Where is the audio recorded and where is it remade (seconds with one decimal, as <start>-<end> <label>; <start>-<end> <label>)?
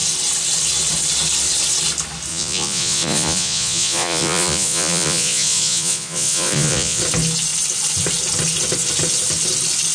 0.0-2.3 recorded; 2.3-7.0 remade; 7.0-9.9 recorded